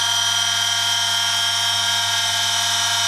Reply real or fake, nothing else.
real